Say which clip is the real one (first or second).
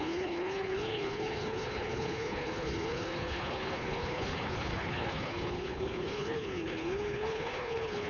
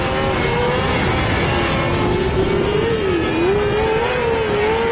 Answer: second